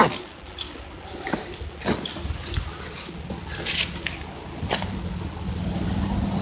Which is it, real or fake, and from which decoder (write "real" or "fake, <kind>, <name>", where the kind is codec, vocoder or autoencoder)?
real